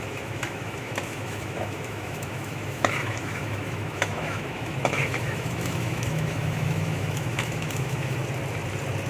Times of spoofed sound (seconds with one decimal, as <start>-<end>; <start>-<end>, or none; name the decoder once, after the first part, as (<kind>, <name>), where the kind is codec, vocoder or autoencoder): 0.0-8.2 (autoencoder, DAC-VAE)